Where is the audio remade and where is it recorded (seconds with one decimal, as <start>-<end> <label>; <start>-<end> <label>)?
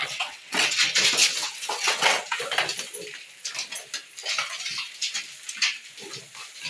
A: 0.0-0.7 remade; 0.7-1.2 recorded; 1.2-2.4 remade; 2.4-6.7 recorded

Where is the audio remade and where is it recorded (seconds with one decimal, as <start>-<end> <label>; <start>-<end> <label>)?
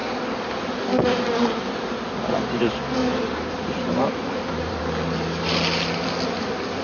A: 0.0-3.0 recorded; 3.0-4.8 remade; 4.8-6.8 recorded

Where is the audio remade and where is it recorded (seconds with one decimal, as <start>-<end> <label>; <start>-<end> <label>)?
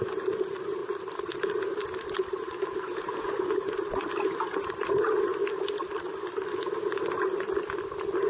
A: 0.0-0.8 remade; 0.8-1.4 recorded; 1.4-5.3 remade; 5.3-7.9 recorded; 7.9-8.3 remade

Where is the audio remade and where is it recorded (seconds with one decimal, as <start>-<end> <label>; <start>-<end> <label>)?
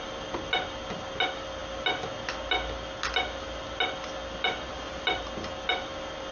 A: 0.0-6.3 recorded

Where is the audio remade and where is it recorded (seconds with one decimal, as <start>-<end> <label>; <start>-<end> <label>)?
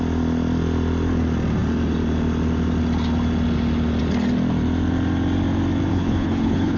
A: 0.0-5.9 recorded; 5.9-6.8 remade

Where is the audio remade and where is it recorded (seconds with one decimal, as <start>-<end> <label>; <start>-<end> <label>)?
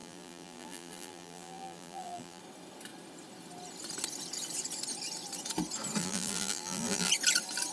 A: 0.0-2.4 remade; 2.4-6.0 recorded; 6.0-7.1 remade; 7.1-7.7 recorded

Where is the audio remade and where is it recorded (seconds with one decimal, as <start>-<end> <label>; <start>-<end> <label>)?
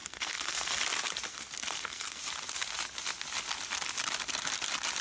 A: 0.0-0.8 remade; 0.8-1.3 recorded; 1.3-2.2 remade; 2.2-5.0 recorded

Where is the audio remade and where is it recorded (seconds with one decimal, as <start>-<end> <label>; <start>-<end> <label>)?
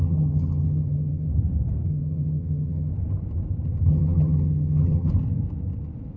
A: 0.0-1.3 remade; 1.3-1.9 recorded; 1.9-2.9 remade; 2.9-3.9 recorded; 3.9-5.1 remade; 5.1-6.2 recorded